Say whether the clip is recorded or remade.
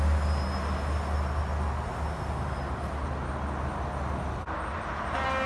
recorded